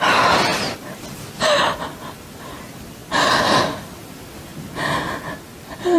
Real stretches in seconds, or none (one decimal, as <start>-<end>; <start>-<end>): 3.0-3.8; 4.5-5.6